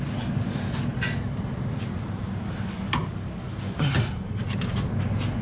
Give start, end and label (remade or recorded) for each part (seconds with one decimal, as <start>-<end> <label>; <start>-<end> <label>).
0.0-0.9 recorded; 0.9-4.1 remade; 4.1-5.4 recorded